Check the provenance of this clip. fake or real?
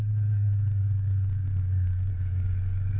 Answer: fake